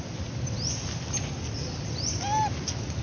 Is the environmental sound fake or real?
real